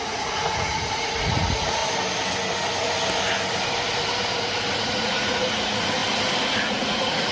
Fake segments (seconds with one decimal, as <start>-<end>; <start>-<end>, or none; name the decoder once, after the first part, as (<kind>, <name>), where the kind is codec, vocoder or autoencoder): 0.0-1.8 (vocoder, Vocos); 4.8-6.0; 6.6-7.3